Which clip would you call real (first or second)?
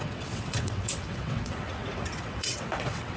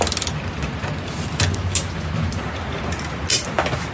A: second